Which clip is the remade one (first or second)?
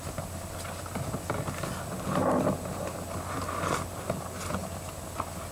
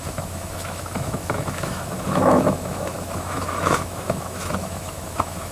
second